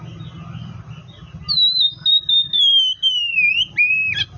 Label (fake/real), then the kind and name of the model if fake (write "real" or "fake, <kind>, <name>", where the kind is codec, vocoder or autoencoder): real